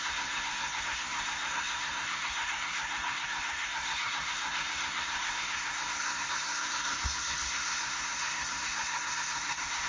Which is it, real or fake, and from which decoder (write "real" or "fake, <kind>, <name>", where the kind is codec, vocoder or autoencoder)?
fake, codec, SNAC